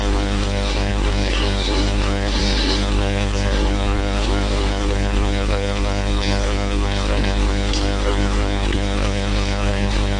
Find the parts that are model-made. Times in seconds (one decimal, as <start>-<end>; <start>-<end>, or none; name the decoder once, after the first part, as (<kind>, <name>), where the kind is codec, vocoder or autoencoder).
0.0-10.2 (codec, SNAC)